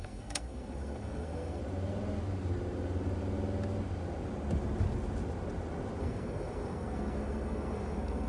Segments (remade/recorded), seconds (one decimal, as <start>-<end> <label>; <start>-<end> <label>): 0.0-1.6 remade; 1.6-6.0 recorded; 6.0-8.3 remade

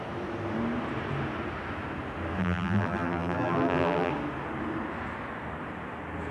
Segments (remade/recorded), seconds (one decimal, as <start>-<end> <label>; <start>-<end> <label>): 0.0-2.4 recorded; 2.4-4.1 remade; 4.1-6.3 recorded